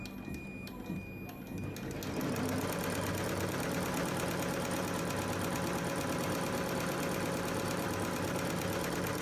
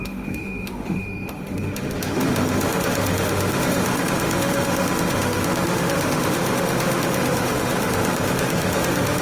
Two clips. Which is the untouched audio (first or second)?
first